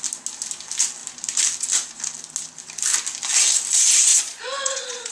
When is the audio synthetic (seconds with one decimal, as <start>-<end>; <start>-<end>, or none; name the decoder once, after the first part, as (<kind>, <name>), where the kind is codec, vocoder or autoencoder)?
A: 4.1-5.1 (vocoder, Vocos)